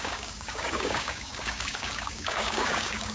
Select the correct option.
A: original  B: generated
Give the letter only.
B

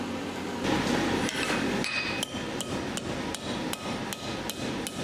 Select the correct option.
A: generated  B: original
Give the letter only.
B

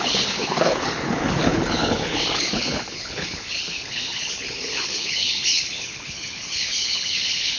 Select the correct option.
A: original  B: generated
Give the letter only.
B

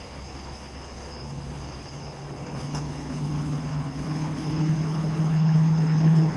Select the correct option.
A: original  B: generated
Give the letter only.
B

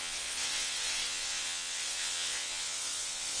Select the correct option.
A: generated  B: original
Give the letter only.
A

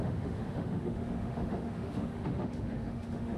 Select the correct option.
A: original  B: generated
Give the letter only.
B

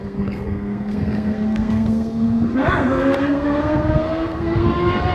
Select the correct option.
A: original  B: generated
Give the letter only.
B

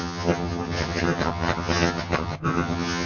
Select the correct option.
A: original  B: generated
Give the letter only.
B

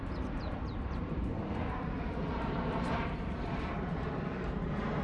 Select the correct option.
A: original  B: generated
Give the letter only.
B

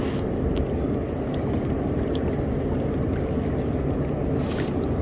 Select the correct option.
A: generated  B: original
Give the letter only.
B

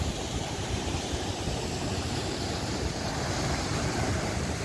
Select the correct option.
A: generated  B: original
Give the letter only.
A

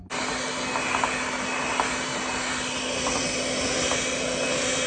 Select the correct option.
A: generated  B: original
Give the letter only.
B